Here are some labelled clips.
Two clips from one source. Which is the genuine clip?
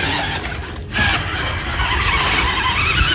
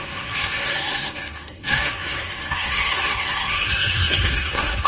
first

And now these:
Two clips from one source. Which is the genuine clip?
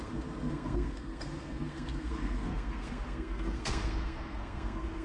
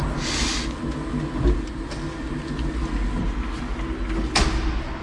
second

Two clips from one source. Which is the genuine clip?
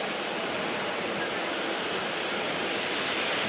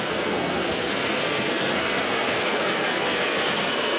first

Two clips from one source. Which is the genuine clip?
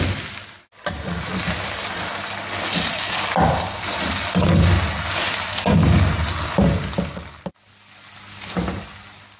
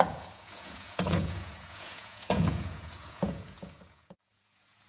first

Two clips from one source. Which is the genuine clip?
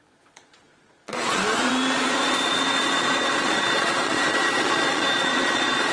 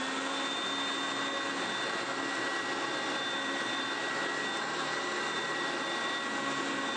second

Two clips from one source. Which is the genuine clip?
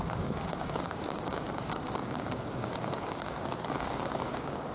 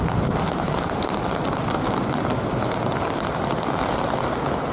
second